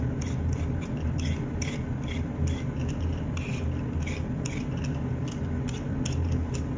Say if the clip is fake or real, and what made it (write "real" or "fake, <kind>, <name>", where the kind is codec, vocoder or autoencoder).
real